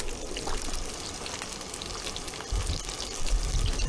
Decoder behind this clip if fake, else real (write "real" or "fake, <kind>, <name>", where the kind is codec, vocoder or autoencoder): real